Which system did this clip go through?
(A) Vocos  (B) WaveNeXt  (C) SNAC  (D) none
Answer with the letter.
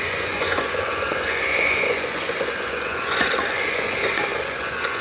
A